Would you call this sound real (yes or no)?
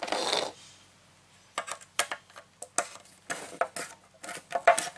yes